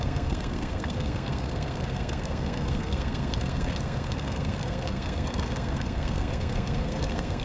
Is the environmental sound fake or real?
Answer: fake